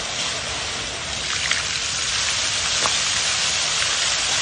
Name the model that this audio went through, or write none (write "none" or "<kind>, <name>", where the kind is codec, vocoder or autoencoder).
none